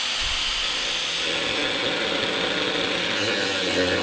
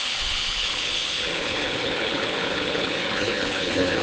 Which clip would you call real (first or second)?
first